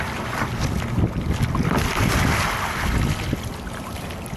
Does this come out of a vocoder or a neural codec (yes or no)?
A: no